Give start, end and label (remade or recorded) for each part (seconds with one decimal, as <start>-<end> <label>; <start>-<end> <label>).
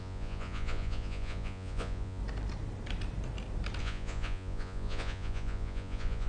0.0-2.2 remade; 2.2-3.8 recorded; 3.8-6.3 remade